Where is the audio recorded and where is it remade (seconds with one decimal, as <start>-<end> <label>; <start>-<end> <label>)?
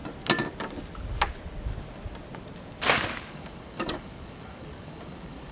0.0-3.3 recorded; 3.3-5.5 remade